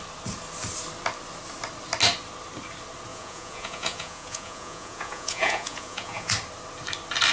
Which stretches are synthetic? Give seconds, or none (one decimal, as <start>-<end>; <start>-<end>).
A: 3.1-6.3